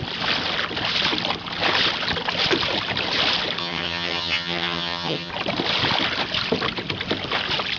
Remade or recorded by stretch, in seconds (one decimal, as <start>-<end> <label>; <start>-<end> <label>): 0.0-3.6 recorded; 3.6-5.3 remade; 5.3-7.8 recorded

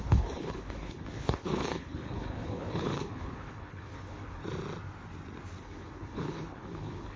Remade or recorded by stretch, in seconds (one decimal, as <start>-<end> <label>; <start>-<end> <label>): 0.0-4.4 remade; 4.4-5.6 recorded; 5.6-7.2 remade

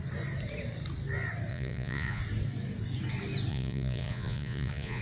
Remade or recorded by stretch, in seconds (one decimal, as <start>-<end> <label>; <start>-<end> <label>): 0.0-1.5 recorded; 1.5-2.2 remade; 2.2-3.5 recorded; 3.5-5.0 remade

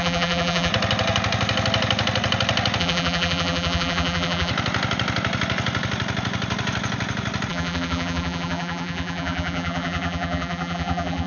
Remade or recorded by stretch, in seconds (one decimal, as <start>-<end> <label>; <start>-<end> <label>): 0.0-0.7 remade; 0.7-2.8 recorded; 2.8-4.5 remade; 4.5-7.5 recorded; 7.5-11.3 remade